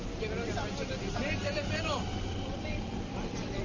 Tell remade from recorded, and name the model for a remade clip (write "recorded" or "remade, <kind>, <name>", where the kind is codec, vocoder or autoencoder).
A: recorded